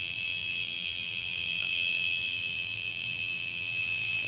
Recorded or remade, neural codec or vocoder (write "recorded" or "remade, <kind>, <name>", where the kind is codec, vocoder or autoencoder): remade, vocoder, BigVGAN v2